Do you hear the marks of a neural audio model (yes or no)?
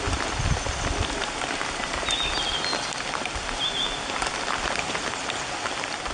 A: no